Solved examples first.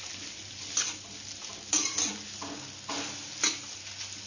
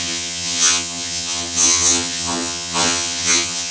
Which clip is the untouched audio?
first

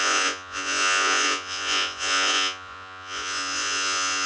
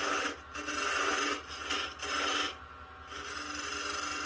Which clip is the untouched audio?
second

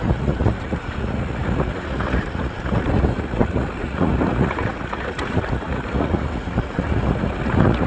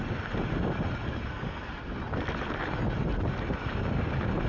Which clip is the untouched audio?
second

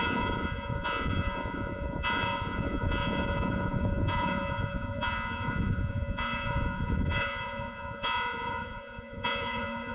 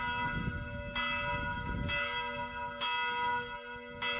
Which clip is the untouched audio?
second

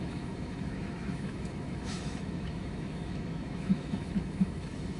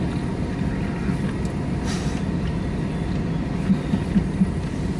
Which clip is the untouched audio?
second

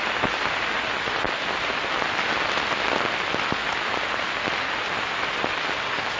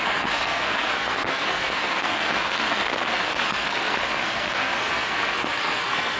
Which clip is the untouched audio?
first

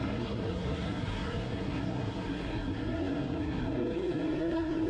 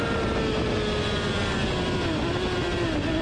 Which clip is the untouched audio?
second